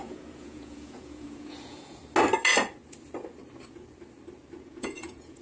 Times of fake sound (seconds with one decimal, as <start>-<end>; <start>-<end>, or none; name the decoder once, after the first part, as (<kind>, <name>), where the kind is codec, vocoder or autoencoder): 0.0-2.0 (vocoder, Vocos); 4.6-5.4